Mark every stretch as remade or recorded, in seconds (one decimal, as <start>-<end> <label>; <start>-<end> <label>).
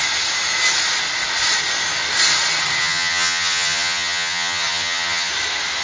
0.0-2.8 recorded; 2.8-5.3 remade; 5.3-5.8 recorded